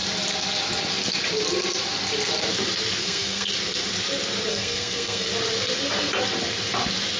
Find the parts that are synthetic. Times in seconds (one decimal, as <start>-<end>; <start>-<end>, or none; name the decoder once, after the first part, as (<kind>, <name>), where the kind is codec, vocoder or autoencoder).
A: 3.0-3.5 (codec, SNAC); 4.5-5.3